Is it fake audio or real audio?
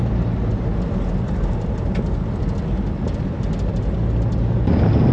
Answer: real